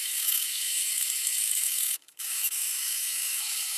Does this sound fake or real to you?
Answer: fake